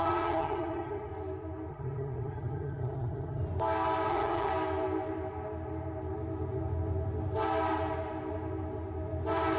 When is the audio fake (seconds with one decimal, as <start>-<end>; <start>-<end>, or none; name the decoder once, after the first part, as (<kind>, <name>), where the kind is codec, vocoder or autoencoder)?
0.0-1.1 (vocoder, HiFi-GAN); 1.7-3.4; 4.1-4.5